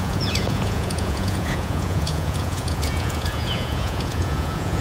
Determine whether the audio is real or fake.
fake